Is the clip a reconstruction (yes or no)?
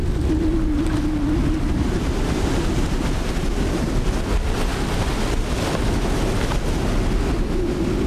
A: no